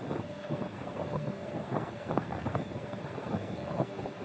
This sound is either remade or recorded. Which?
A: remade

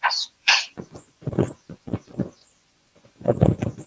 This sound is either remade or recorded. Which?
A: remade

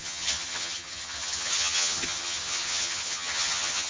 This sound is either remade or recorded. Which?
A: remade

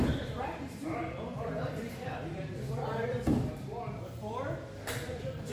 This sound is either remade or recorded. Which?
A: remade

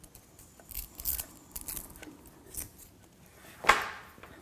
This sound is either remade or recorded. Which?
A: recorded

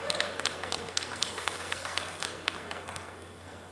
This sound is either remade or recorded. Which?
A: remade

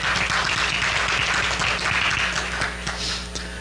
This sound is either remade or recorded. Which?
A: recorded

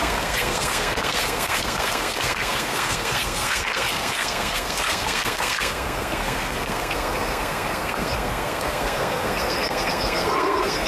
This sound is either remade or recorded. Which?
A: remade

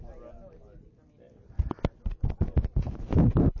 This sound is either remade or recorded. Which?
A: recorded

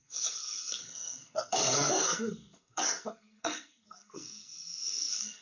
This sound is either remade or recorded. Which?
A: remade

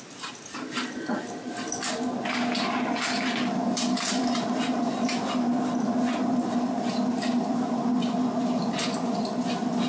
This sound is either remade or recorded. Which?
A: recorded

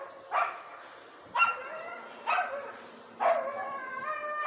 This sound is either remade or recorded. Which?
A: recorded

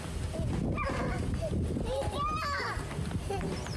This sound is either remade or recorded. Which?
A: recorded